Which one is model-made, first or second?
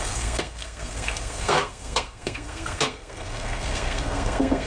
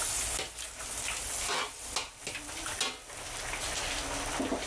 first